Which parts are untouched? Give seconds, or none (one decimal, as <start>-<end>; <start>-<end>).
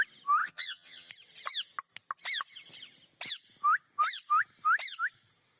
0.0-0.4; 1.1-5.6